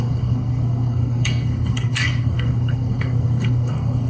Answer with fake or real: fake